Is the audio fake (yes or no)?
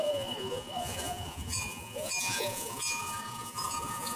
yes